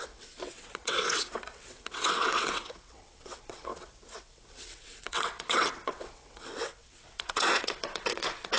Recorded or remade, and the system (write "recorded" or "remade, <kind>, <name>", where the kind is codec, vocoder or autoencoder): remade, vocoder, WaveNeXt